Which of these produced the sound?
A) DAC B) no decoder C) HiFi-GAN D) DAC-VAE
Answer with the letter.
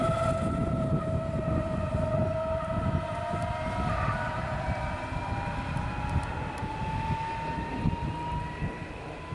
B